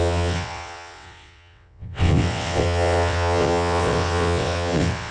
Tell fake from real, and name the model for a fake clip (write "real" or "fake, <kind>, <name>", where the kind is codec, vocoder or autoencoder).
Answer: fake, vocoder, WaveNeXt